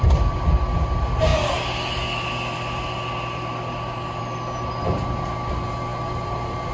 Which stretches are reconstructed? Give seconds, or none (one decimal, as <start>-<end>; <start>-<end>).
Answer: none

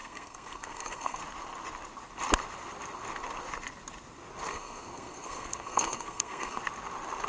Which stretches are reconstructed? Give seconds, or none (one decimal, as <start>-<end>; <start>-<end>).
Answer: 0.0-1.2; 4.5-6.6

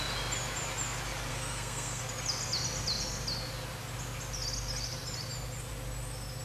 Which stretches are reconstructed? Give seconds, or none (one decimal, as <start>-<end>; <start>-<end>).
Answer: 1.3-2.0